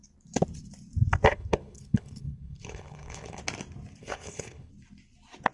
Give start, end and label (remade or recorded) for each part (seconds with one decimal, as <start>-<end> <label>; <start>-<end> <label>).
0.0-1.3 recorded; 1.3-3.4 remade; 3.4-4.0 recorded; 4.0-4.7 remade; 4.7-5.5 recorded